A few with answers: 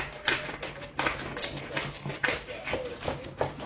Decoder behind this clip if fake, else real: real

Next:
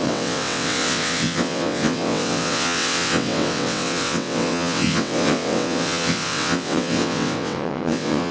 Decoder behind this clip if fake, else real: fake, vocoder, WaveNeXt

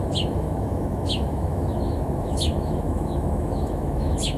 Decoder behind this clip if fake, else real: fake, autoencoder, DAC-VAE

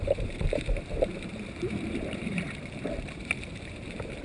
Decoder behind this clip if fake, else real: fake, vocoder, BigVGAN v2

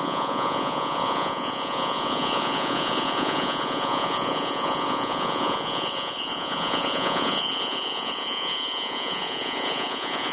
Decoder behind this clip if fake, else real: fake, vocoder, Vocos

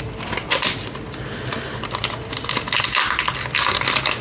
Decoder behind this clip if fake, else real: real